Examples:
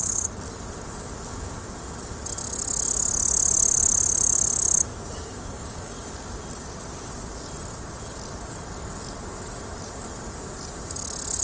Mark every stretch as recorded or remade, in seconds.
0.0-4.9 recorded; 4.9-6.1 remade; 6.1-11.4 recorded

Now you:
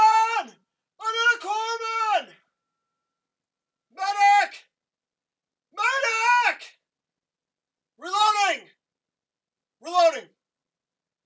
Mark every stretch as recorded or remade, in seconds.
0.0-11.3 recorded

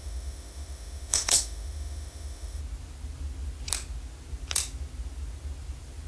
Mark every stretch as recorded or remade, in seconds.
0.0-2.6 remade; 2.6-6.1 recorded